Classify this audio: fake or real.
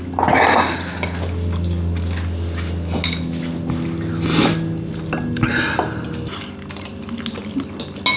real